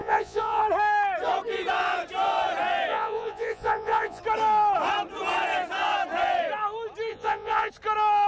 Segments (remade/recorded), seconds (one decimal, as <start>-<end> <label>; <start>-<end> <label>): 0.0-0.6 remade; 0.6-2.9 recorded; 2.9-4.2 remade; 4.2-7.1 recorded; 7.1-7.7 remade; 7.7-8.3 recorded